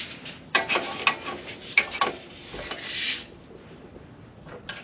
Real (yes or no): yes